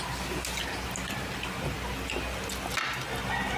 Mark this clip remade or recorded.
recorded